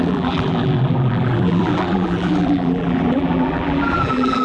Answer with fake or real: fake